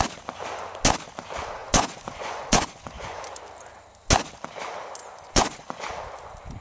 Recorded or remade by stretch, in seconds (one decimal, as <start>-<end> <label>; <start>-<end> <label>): 0.0-1.6 recorded; 1.6-3.2 remade; 3.2-5.0 recorded; 5.0-5.8 remade; 5.8-6.6 recorded